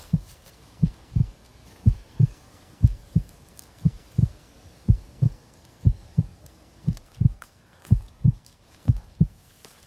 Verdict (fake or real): fake